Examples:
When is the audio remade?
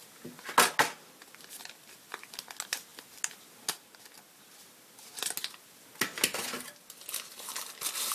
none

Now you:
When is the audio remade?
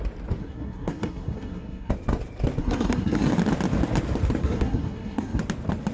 0.4-1.9 (codec, SNAC); 2.6-3.3; 4.4-5.4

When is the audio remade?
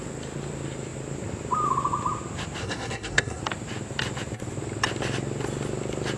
2.6-3.4 (codec, SNAC)